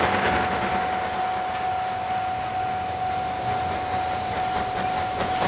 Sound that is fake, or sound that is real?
real